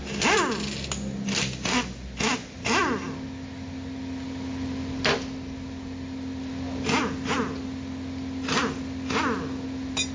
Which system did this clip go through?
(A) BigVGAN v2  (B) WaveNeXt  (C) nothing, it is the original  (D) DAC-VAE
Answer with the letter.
C